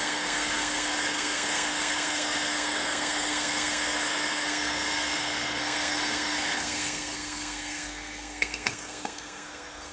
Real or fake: fake